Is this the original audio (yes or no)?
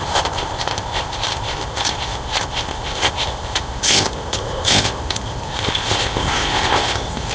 no